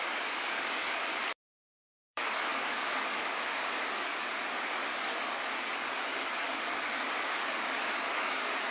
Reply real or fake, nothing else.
fake